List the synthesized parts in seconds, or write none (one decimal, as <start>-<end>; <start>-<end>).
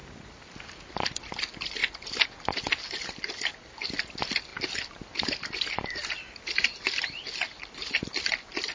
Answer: none